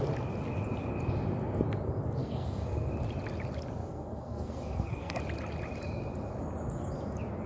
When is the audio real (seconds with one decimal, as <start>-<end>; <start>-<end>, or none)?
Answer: 0.0-2.2; 2.9-3.8; 5.2-7.5